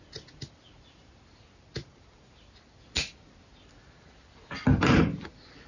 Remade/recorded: recorded